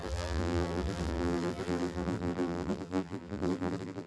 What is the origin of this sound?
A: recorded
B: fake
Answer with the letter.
B